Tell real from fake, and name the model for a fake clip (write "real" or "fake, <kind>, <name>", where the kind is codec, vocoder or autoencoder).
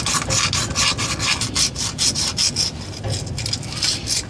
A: real